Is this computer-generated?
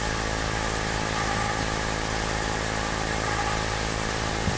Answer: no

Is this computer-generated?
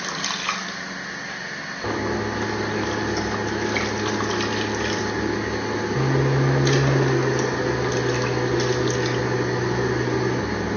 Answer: no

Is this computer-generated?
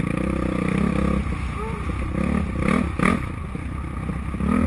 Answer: no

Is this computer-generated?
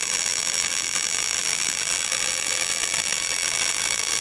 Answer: yes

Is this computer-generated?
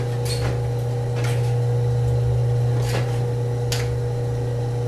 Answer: no